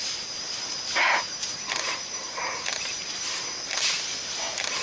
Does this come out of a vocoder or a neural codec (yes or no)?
yes